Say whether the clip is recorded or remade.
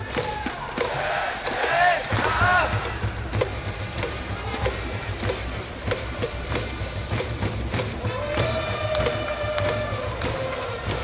remade